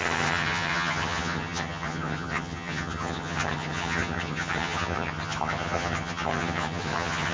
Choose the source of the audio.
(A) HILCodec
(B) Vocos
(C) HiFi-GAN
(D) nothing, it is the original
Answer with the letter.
C